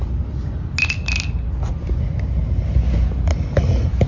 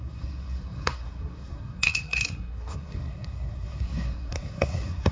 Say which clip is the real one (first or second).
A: first